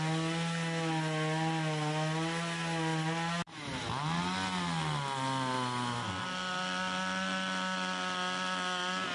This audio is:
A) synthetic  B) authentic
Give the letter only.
B